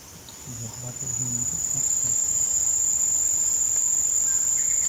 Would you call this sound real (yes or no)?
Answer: yes